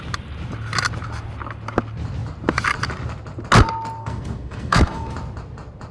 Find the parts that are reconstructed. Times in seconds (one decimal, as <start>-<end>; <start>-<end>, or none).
4.0-5.1